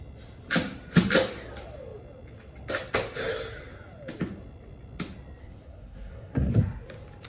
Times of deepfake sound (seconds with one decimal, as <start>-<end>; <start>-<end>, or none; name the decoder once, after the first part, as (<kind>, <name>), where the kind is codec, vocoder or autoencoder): 5.4-6.5 (codec, SNAC)